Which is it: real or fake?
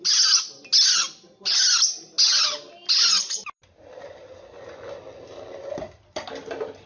real